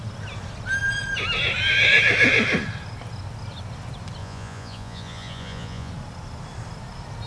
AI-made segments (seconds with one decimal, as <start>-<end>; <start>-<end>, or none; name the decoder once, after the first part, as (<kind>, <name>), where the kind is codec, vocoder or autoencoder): 4.2-5.9 (vocoder, Vocos)